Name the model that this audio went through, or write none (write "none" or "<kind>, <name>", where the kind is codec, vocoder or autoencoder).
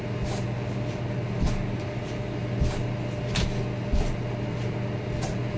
none